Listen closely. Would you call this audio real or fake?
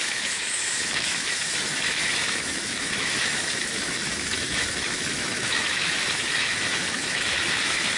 fake